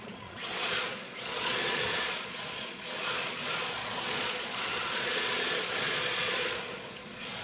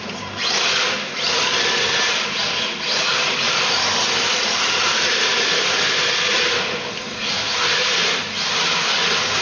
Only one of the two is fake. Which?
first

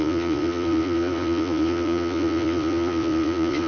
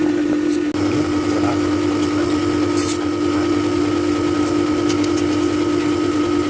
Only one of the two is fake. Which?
first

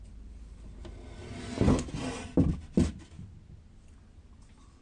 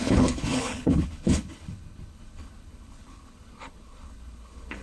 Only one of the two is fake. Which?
second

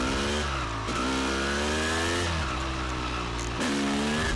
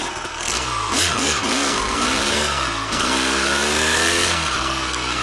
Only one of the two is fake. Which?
second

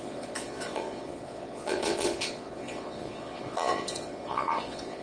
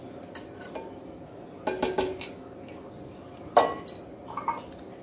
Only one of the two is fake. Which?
first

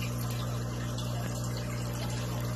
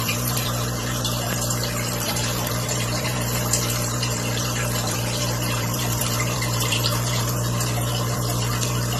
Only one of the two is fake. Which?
second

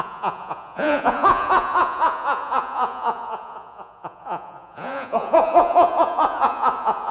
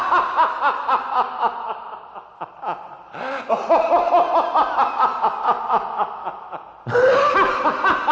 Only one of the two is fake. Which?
first